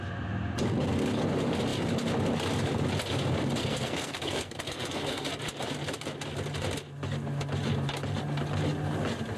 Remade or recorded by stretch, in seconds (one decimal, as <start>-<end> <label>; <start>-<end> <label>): 0.0-3.6 recorded; 3.6-5.3 remade; 5.3-9.4 recorded